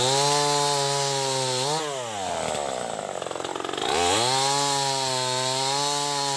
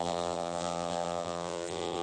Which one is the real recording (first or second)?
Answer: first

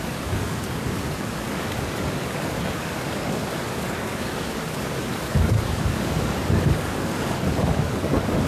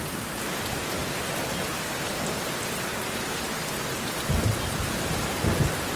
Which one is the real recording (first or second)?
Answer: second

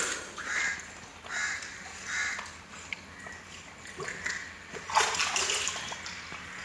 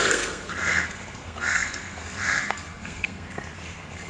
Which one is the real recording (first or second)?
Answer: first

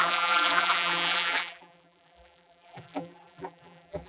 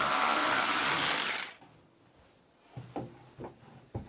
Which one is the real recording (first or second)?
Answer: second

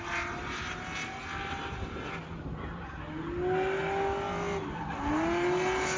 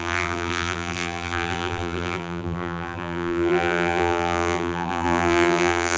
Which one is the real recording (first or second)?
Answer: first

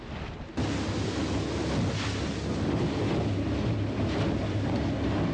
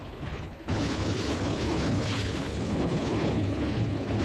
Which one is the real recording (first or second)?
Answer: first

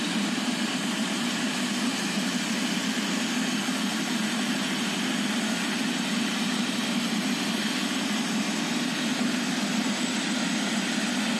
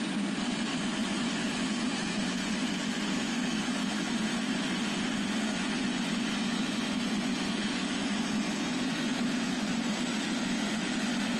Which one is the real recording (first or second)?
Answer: first